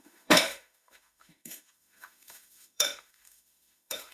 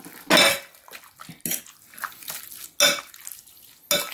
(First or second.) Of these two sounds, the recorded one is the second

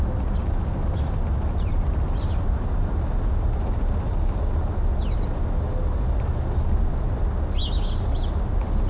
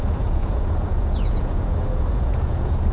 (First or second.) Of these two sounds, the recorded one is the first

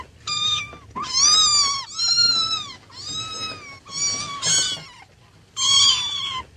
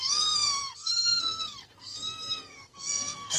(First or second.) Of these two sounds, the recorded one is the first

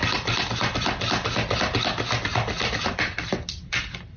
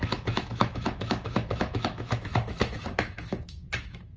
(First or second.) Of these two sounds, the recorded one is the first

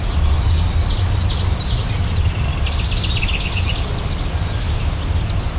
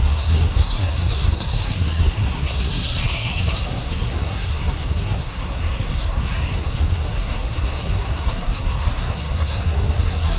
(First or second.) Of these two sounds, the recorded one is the first